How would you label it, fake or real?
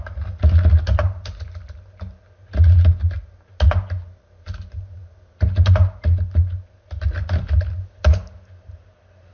real